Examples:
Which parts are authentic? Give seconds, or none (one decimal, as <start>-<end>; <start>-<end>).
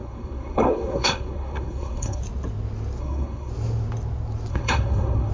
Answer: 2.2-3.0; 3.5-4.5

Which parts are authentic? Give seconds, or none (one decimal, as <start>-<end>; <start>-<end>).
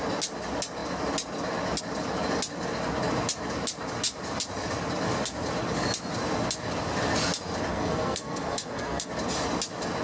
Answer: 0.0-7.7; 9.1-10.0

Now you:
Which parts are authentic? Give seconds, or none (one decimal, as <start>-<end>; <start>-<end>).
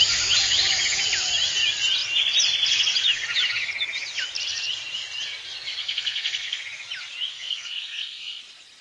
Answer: 0.0-5.8; 6.6-7.3; 8.4-8.8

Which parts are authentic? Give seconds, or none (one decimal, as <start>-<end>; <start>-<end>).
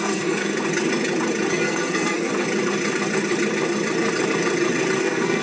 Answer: 0.5-1.5; 2.3-5.0